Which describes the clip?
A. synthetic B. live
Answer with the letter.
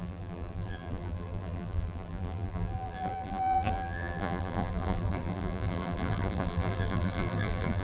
A